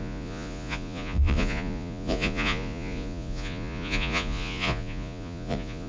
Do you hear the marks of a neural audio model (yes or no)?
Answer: yes